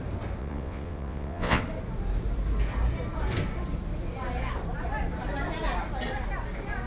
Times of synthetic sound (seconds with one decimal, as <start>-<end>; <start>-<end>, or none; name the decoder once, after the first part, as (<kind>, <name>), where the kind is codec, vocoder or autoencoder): 0.4-1.6 (vocoder, WaveNeXt)